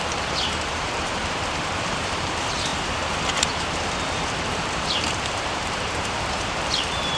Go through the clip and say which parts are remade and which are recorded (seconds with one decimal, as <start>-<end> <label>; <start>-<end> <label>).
0.0-7.2 remade